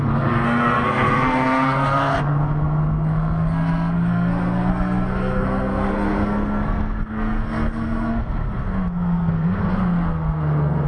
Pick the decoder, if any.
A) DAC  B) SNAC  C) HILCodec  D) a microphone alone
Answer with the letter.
B